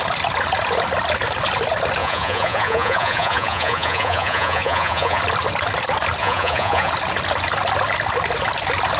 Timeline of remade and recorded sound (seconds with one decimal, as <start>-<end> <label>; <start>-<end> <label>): 0.0-2.0 recorded; 2.0-5.2 remade; 5.2-6.2 recorded; 6.2-6.9 remade; 6.9-9.0 recorded